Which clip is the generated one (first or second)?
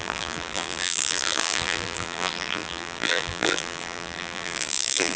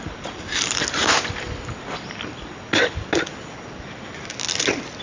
first